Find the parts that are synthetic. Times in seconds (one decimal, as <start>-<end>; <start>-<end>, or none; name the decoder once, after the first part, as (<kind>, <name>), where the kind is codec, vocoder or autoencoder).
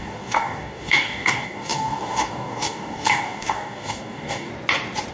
0.0-4.5 (codec, DAC)